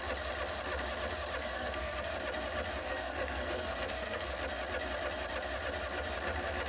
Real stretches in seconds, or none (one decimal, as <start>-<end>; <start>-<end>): 0.0-1.4; 2.1-2.8; 4.4-6.7